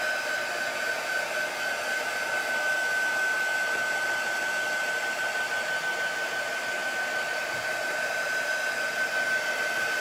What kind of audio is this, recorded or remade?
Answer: recorded